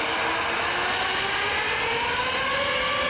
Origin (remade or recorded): recorded